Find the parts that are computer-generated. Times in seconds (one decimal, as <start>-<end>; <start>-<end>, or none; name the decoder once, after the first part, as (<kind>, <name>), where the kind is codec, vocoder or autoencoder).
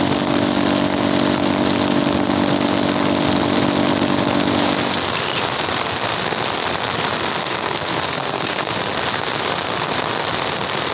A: 7.4-8.7 (codec, SNAC)